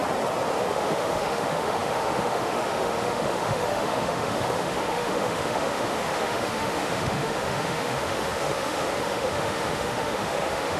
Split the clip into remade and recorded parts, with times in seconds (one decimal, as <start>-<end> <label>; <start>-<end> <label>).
0.0-0.6 recorded; 0.6-10.8 remade